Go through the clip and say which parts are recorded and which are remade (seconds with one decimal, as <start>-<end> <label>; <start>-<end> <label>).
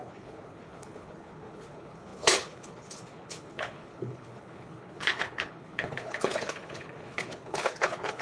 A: 0.0-8.2 remade